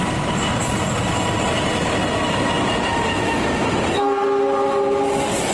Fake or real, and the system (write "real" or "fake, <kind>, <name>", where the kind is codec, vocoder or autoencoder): real